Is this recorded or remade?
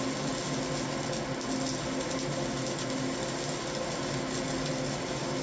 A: recorded